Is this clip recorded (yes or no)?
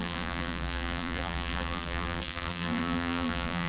no